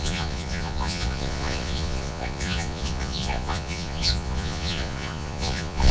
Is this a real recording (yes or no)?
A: no